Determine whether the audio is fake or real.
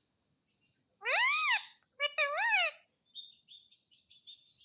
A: real